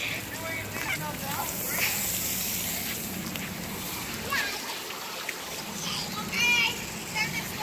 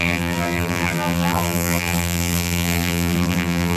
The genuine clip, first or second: first